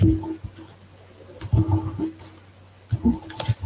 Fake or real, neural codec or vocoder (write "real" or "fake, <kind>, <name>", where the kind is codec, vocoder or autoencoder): real